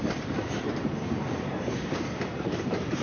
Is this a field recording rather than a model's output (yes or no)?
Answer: no